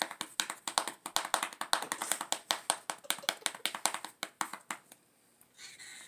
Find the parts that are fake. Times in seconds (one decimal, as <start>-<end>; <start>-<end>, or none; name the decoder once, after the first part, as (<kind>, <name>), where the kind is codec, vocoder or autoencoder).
none